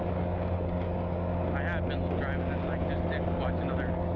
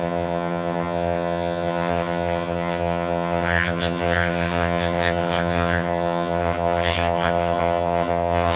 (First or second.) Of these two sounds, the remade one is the second